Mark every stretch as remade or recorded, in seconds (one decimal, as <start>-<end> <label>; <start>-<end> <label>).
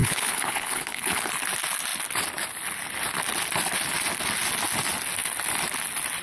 0.0-1.3 remade; 1.3-6.2 recorded